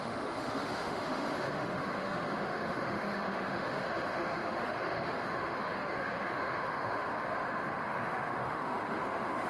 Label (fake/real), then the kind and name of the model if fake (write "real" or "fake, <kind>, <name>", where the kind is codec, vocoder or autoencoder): fake, autoencoder, DAC-VAE